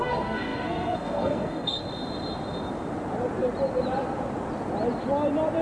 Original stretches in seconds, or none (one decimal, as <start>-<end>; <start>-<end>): 1.8-5.6